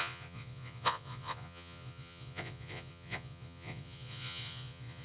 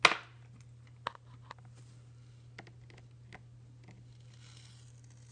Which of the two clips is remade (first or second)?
first